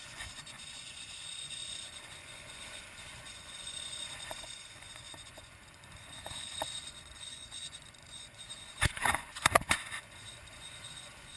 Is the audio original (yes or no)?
no